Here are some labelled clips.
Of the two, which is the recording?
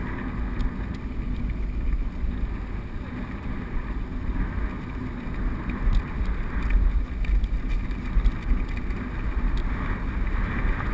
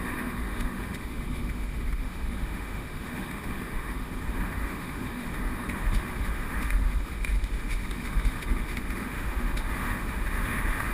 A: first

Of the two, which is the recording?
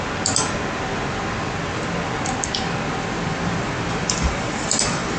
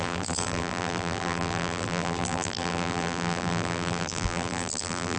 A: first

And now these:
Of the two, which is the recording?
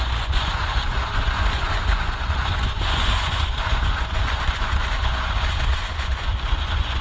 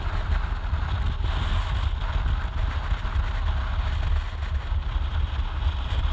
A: second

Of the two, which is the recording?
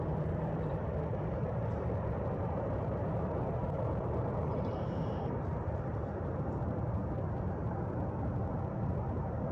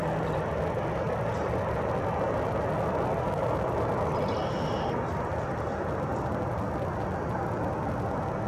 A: second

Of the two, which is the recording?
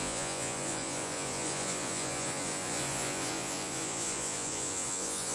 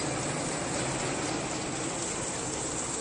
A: second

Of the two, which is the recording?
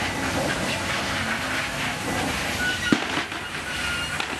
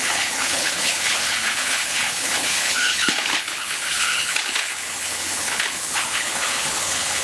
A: first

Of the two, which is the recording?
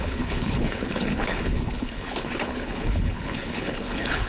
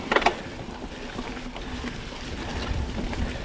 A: second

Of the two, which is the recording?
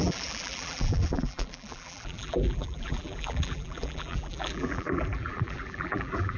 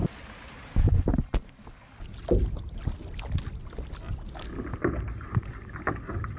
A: second